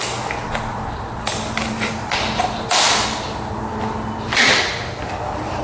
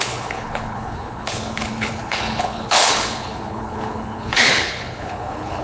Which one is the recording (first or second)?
first